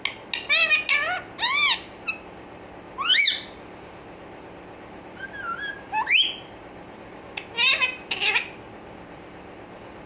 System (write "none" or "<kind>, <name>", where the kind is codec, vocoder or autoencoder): none